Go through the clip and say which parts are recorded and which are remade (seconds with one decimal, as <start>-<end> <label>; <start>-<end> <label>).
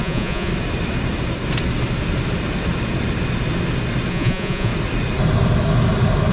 0.0-0.5 remade; 0.5-4.1 recorded; 4.1-4.7 remade; 4.7-6.3 recorded